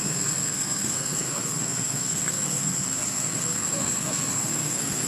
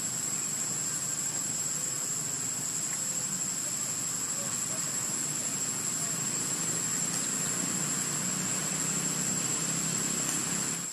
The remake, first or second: first